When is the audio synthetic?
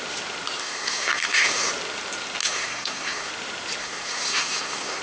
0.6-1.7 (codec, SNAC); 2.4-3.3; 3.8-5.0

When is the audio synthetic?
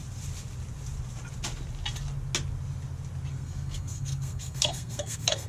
3.3-5.5 (codec, SNAC)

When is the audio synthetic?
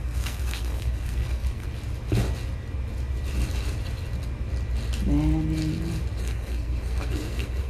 0.0-1.7 (codec, SNAC); 6.2-7.7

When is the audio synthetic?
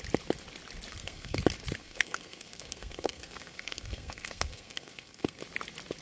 0.9-1.4 (codec, SNAC); 1.8-5.4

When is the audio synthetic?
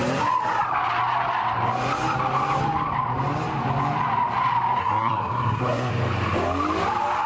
4.8-5.9 (codec, SNAC)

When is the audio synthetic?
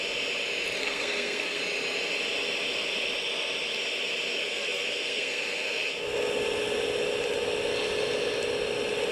0.8-1.6 (codec, SNAC); 4.4-5.9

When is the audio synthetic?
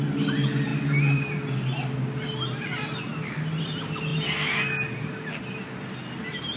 none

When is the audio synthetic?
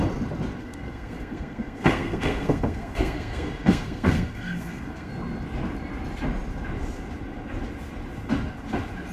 0.6-5.1 (codec, SNAC)